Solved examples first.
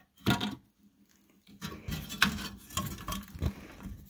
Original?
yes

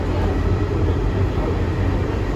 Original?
yes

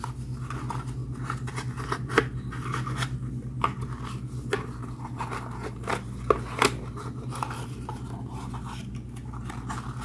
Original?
yes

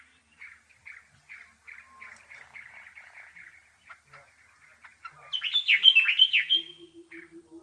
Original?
yes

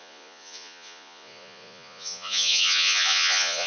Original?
no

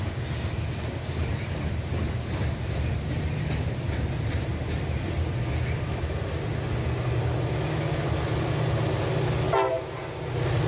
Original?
yes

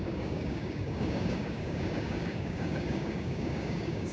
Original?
no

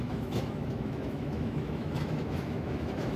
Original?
no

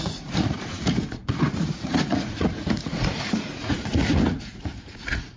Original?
no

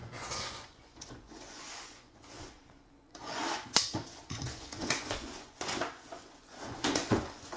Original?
no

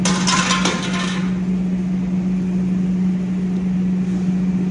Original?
yes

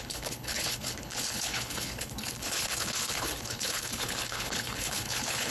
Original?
no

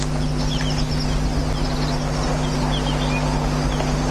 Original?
yes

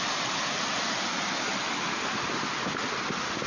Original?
yes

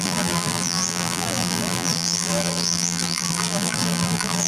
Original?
no